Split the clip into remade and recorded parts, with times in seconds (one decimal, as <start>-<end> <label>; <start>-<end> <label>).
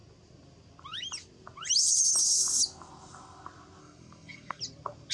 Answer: 0.0-3.8 recorded; 3.8-4.6 remade; 4.6-5.1 recorded